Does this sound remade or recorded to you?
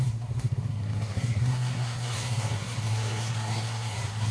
remade